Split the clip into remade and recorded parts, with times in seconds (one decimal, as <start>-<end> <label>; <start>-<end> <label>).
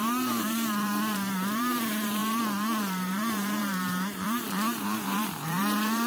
0.0-6.1 remade